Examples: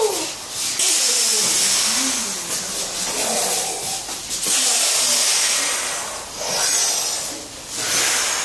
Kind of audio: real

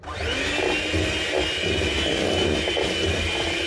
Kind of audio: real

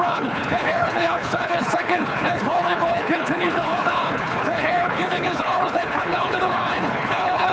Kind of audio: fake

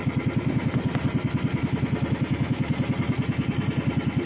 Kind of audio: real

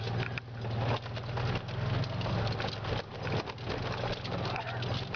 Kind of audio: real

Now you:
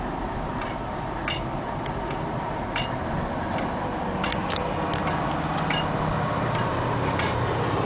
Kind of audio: real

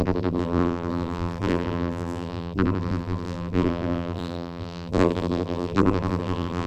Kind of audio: fake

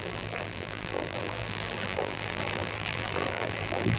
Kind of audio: fake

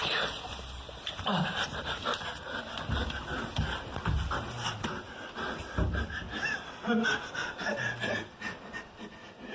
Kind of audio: real